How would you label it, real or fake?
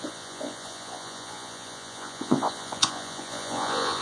fake